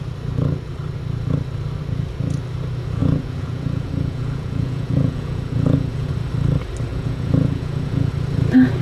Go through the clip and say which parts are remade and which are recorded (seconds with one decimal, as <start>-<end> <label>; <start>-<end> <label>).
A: 0.0-3.0 recorded; 3.0-6.1 remade; 6.1-6.9 recorded; 6.9-8.1 remade; 8.1-8.8 recorded